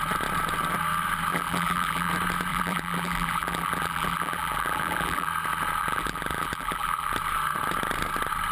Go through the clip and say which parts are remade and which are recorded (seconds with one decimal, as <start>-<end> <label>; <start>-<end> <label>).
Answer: 0.0-1.3 recorded; 1.3-2.1 remade; 2.1-2.5 recorded; 2.5-5.3 remade; 5.3-5.8 recorded; 5.8-7.1 remade; 7.1-8.5 recorded